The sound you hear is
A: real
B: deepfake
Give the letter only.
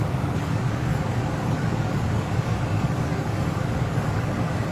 B